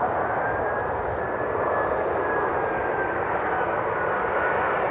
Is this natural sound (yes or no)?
yes